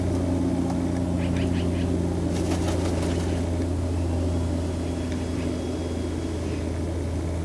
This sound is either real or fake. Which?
real